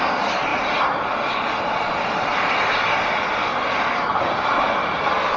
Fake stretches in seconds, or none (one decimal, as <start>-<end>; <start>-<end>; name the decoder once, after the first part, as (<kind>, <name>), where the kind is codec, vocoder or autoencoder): 0.5-1.0 (vocoder, BigVGAN v2)